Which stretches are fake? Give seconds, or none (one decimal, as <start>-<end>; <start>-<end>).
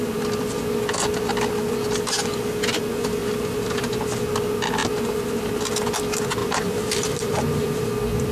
3.2-4.0; 6.4-7.9